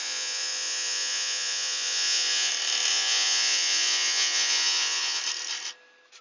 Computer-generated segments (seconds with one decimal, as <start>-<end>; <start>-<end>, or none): 0.0-2.5; 2.9-5.2

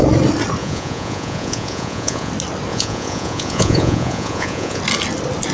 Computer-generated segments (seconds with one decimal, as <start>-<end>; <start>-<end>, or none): 0.6-2.3; 2.7-4.8

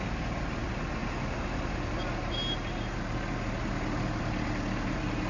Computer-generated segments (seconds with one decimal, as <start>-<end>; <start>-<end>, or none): none

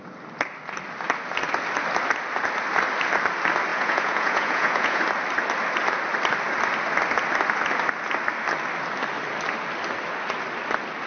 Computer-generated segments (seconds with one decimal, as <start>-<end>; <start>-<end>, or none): 3.7-5.0

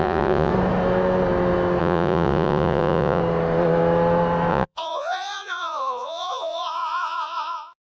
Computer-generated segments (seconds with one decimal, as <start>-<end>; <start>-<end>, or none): 0.0-0.5; 1.8-3.2; 4.5-7.9

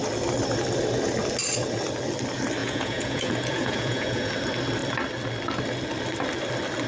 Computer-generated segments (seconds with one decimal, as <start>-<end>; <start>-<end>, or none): 2.6-4.3

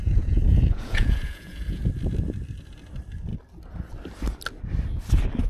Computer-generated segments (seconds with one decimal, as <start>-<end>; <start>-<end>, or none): 0.0-1.9